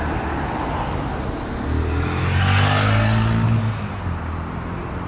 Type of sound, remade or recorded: recorded